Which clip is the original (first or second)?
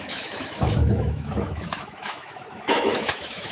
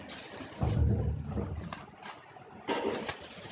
second